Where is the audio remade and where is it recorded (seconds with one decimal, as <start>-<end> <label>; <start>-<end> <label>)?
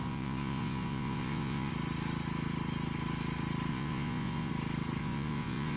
0.0-1.7 remade; 1.7-3.7 recorded; 3.7-4.5 remade; 4.5-5.0 recorded; 5.0-5.8 remade